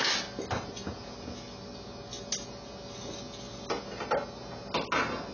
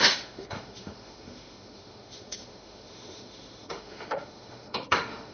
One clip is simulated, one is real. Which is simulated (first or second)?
second